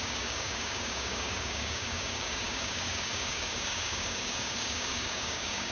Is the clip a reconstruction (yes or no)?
yes